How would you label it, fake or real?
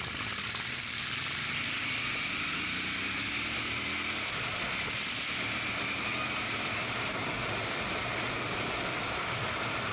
real